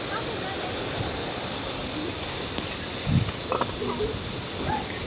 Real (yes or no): yes